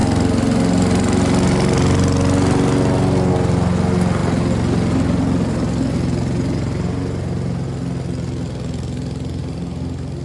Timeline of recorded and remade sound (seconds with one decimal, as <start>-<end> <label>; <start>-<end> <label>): 0.0-10.2 recorded